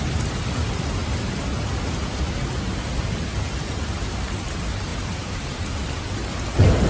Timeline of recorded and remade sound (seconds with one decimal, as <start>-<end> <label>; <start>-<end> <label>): 0.0-4.9 recorded; 4.9-5.6 remade; 5.6-6.9 recorded